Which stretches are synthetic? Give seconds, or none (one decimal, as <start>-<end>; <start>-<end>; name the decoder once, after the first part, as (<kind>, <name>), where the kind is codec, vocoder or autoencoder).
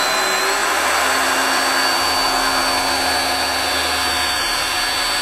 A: none